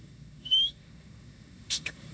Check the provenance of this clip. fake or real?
fake